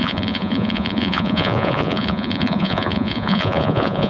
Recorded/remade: remade